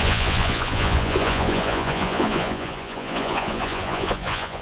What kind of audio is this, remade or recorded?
remade